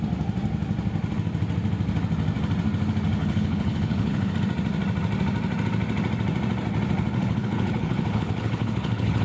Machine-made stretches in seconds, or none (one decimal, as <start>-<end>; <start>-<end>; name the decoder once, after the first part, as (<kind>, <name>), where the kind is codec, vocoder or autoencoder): 3.2-4.3 (codec, HILCodec); 7.2-9.2